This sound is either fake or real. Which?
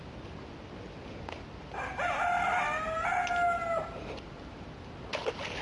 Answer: real